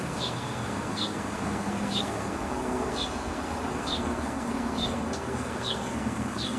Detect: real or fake fake